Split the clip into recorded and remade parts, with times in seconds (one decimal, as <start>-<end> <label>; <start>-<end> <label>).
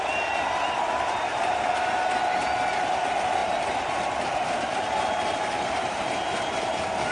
0.0-3.4 recorded; 3.4-6.5 remade; 6.5-7.1 recorded